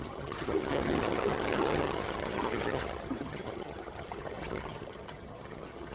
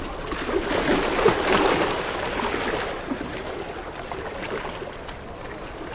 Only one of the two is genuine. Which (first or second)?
second